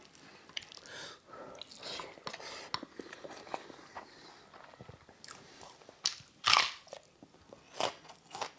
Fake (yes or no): no